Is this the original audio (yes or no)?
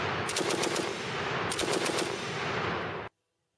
yes